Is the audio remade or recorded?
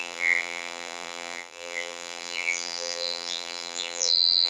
remade